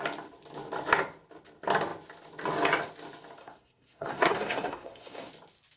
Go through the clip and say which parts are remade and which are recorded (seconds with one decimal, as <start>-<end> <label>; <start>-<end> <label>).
0.0-3.4 recorded; 3.4-5.3 remade; 5.3-5.8 recorded